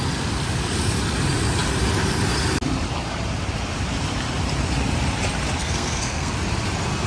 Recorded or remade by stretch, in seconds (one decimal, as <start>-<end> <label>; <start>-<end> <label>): 0.0-5.6 recorded; 5.6-6.3 remade; 6.3-7.1 recorded

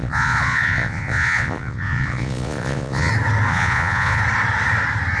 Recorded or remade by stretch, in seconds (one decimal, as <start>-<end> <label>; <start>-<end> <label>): 0.0-3.1 remade; 3.1-3.5 recorded; 3.5-4.2 remade; 4.2-5.2 recorded